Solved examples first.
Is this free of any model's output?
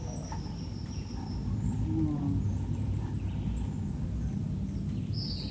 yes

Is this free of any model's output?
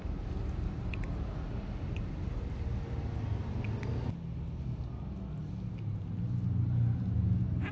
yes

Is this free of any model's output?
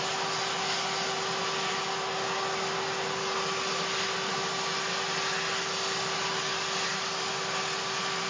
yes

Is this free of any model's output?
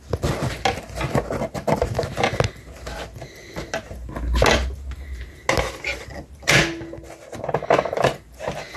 yes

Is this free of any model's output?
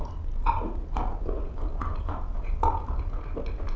yes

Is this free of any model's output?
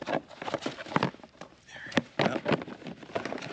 yes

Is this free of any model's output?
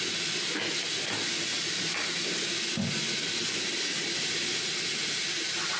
yes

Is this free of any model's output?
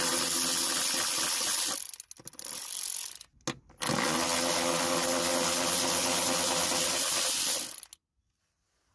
yes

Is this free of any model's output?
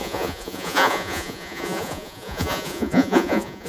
no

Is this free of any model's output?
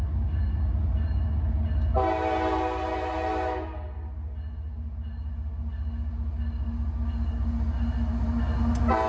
yes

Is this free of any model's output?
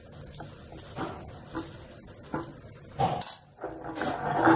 yes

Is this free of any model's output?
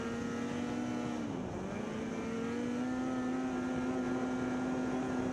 yes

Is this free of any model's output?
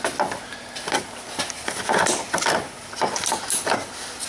yes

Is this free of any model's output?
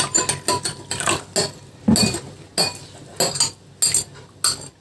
yes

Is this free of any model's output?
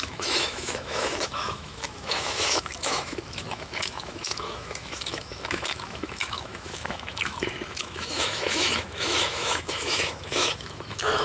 no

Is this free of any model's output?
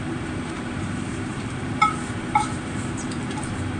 no